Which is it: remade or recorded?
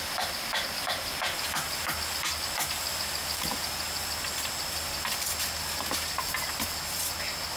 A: recorded